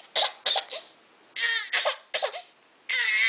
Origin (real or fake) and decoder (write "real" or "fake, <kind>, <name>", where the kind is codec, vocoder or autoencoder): real